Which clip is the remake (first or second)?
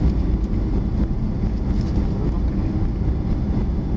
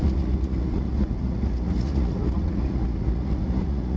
second